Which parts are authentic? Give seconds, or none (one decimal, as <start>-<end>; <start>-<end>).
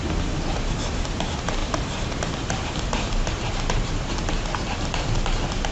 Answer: 0.0-5.7